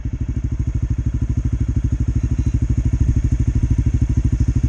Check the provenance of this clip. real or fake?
real